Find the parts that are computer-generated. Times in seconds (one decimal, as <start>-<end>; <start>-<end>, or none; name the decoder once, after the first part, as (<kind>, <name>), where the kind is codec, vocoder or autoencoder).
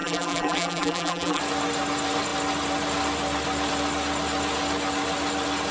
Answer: 0.0-1.4 (vocoder, BigVGAN v2)